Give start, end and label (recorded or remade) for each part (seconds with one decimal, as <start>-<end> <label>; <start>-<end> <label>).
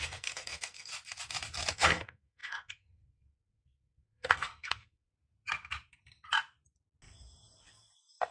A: 0.0-0.9 remade; 0.9-1.7 recorded; 1.7-5.1 remade; 5.1-8.3 recorded